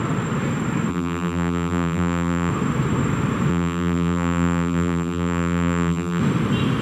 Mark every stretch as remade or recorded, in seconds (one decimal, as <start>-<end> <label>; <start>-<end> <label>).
0.0-0.9 recorded; 0.9-2.5 remade; 2.5-3.5 recorded; 3.5-6.2 remade; 6.2-6.8 recorded